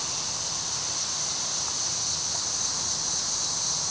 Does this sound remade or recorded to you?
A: recorded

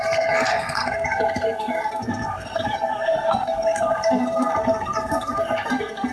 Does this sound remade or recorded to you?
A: remade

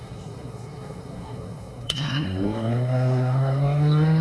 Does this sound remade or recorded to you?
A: remade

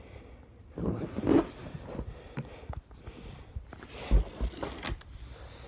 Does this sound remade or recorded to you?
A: recorded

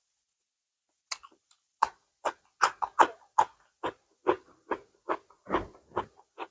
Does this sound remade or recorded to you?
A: recorded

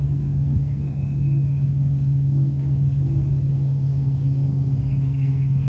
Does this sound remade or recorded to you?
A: remade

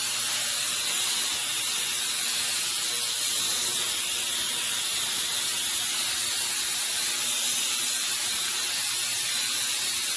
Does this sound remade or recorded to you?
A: recorded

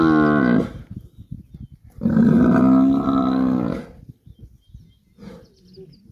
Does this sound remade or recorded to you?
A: recorded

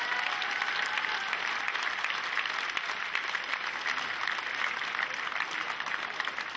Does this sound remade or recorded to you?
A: recorded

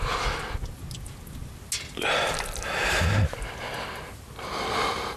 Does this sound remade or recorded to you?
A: recorded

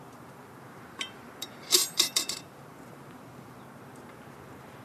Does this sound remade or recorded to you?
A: remade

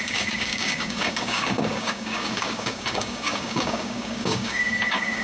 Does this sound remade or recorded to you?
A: remade